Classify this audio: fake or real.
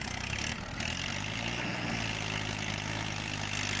real